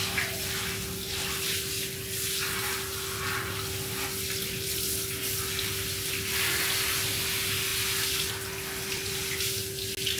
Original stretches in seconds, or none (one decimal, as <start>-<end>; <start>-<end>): 0.0-10.2